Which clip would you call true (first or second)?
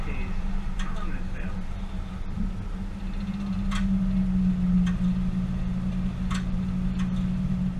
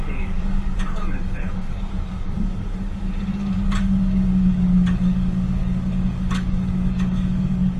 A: first